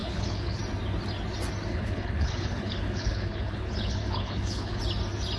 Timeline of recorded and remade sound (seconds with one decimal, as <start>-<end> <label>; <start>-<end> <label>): 0.0-0.6 remade; 0.6-1.7 recorded; 1.7-4.8 remade; 4.8-5.4 recorded